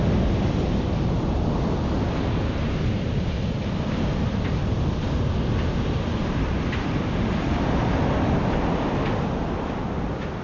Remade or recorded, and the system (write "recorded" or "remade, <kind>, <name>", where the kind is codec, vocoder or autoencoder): recorded